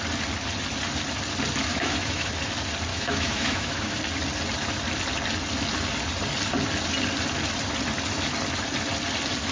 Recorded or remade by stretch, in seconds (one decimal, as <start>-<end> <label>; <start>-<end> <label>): 0.0-1.7 recorded; 1.7-2.3 remade; 2.3-2.9 recorded; 2.9-4.0 remade; 4.0-9.5 recorded